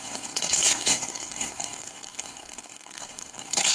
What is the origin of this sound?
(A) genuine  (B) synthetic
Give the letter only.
B